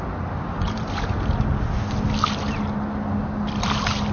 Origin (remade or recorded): recorded